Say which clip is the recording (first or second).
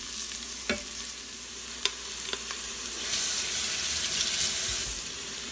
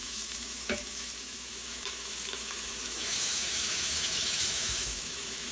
first